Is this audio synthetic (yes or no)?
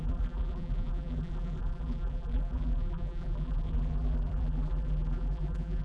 yes